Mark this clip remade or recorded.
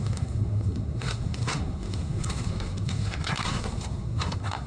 remade